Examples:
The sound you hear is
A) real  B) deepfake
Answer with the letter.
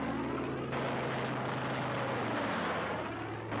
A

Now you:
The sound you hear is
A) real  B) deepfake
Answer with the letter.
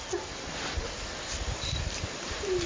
A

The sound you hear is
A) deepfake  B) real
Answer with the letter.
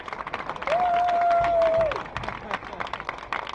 B